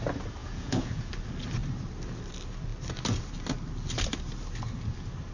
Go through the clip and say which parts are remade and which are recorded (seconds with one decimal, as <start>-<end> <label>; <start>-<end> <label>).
0.0-0.4 recorded; 0.4-1.1 remade; 1.1-5.3 recorded